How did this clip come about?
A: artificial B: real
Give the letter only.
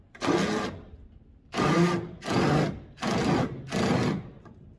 B